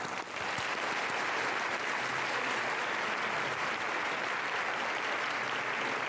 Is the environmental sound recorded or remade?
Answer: recorded